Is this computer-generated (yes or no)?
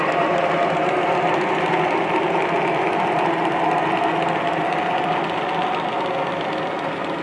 no